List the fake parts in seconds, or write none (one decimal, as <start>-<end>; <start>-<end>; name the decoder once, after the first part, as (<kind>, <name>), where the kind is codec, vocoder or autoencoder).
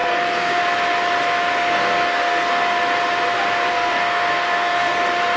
0.0-0.6 (codec, SNAC); 1.5-2.5; 3.7-5.0